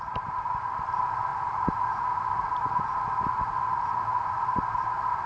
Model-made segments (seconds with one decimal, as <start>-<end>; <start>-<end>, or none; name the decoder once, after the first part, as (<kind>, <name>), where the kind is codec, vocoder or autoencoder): none